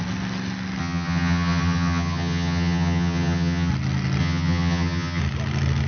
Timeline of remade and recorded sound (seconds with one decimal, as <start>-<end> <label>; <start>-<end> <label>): 0.0-0.8 recorded; 0.8-3.7 remade; 3.7-4.2 recorded; 4.2-5.2 remade; 5.2-5.9 recorded

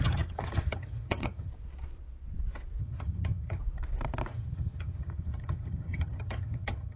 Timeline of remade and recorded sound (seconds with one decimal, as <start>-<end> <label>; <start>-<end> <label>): 0.0-1.5 remade; 1.5-2.8 recorded; 2.8-3.6 remade; 3.6-4.3 recorded; 4.3-7.0 remade

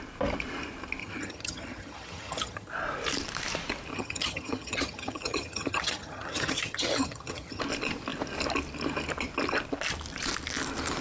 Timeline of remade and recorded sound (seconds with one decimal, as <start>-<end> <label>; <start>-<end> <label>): 0.0-1.0 recorded; 1.0-2.7 remade; 2.7-3.9 recorded; 3.9-7.6 remade; 7.6-11.0 recorded

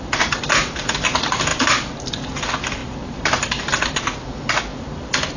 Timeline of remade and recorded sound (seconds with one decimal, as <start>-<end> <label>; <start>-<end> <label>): 0.0-5.4 recorded

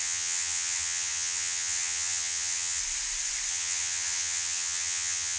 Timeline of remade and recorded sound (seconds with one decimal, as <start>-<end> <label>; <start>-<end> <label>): 0.0-2.8 remade; 2.8-3.5 recorded; 3.5-5.4 remade